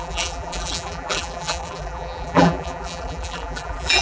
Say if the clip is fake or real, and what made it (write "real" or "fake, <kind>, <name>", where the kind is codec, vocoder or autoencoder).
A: fake, vocoder, BigVGAN v2